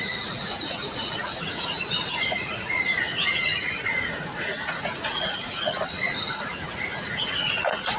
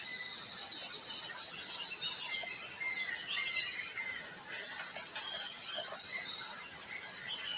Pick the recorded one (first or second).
second